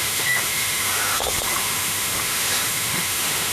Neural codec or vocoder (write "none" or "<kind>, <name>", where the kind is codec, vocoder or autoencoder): autoencoder, DAC-VAE